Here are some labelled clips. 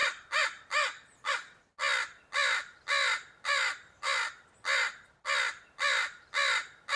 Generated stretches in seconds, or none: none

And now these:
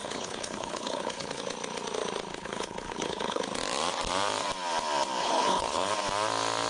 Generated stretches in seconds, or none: 0.0-1.4 (codec, HILCodec); 2.3-3.4; 5.2-5.9

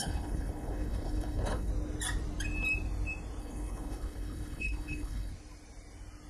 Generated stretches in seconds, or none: 0.0-1.7 (codec, HILCodec); 3.4-5.3

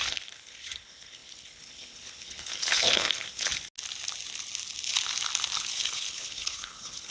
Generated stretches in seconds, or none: 0.0-3.5 (codec, HILCodec); 5.6-7.1

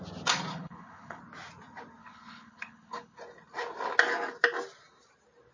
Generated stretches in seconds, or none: 0.5-1.2 (codec, HILCodec); 2.0-3.2